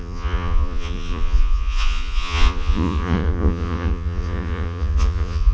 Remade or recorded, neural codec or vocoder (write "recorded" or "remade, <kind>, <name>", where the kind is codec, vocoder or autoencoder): remade, vocoder, Vocos